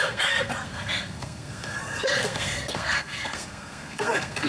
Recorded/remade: remade